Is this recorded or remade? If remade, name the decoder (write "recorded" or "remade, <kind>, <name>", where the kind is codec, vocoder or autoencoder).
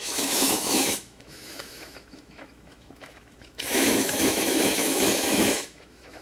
remade, autoencoder, DAC-VAE